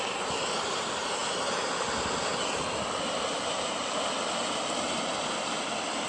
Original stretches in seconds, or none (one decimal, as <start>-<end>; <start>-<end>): 0.0-6.1